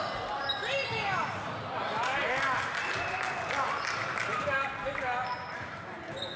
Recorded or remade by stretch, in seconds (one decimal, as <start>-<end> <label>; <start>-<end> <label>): 0.0-6.4 recorded